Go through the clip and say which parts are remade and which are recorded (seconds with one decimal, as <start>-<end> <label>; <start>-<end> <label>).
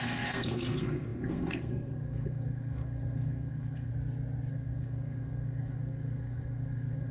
0.0-3.9 remade; 3.9-4.5 recorded; 4.5-7.1 remade